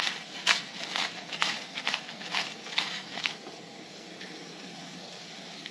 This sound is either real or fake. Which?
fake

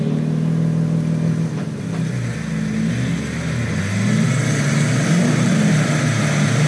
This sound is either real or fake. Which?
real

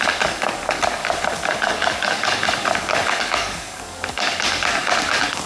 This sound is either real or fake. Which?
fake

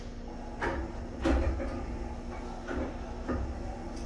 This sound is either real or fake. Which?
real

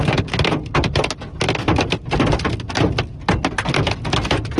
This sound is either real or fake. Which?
real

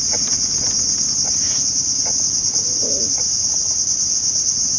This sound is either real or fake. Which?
real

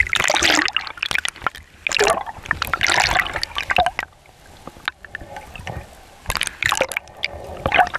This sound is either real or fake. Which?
real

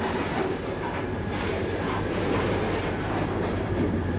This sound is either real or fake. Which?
fake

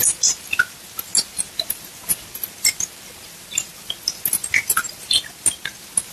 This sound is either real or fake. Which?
real